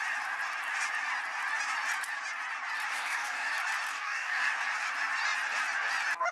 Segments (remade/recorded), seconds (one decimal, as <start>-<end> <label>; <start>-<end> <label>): 0.0-2.9 recorded; 2.9-3.5 remade; 3.5-3.9 recorded; 3.9-4.5 remade; 4.5-6.3 recorded